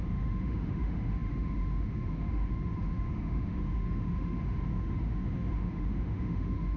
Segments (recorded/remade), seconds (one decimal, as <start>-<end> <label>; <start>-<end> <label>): 0.0-6.8 remade